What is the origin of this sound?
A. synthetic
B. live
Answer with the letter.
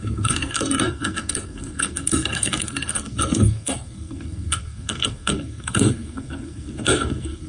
A